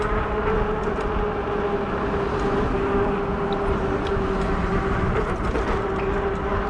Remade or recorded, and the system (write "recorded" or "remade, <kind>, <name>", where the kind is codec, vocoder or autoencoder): recorded